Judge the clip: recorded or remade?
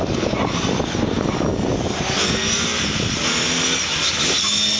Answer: recorded